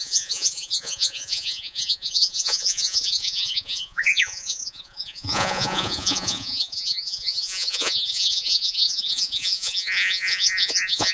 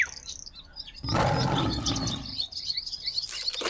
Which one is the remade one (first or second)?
first